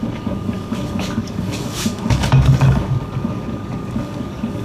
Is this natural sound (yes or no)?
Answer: no